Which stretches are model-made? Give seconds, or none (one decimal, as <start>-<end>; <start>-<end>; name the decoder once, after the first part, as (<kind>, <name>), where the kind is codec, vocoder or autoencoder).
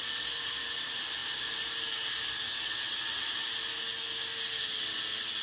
none